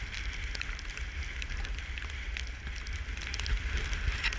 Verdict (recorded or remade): recorded